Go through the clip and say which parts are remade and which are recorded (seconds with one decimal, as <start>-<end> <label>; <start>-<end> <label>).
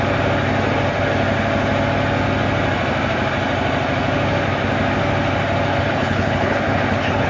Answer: 0.0-5.7 recorded; 5.7-7.3 remade